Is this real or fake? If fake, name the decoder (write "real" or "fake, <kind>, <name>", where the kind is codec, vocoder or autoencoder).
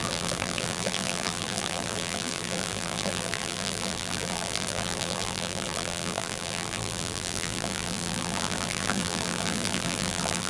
fake, vocoder, BigVGAN v2